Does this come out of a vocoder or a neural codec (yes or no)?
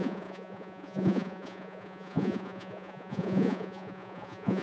yes